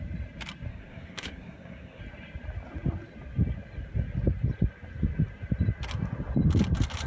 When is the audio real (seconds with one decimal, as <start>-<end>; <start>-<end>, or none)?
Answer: 0.0-0.7; 2.0-7.1